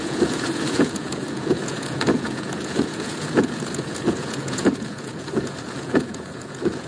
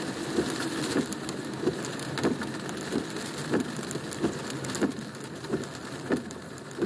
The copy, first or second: first